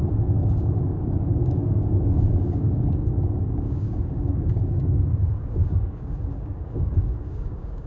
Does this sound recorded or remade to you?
remade